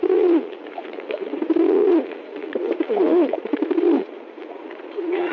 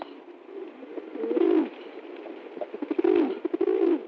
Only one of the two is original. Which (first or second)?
second